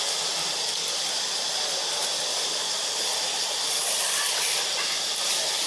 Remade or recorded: recorded